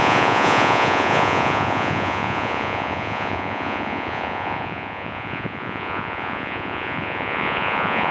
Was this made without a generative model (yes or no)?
no